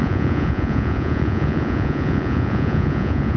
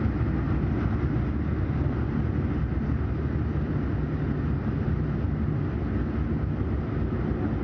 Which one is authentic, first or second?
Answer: second